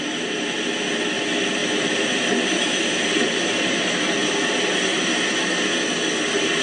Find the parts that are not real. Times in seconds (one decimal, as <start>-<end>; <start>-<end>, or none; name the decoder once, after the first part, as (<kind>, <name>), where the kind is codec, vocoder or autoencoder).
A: 1.6-5.4 (vocoder, BigVGAN v2)